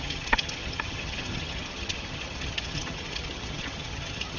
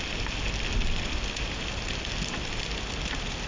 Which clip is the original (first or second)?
second